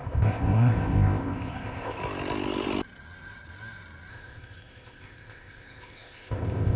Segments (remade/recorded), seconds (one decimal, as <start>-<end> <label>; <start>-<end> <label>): 0.0-2.0 remade; 2.0-4.1 recorded; 4.1-6.8 remade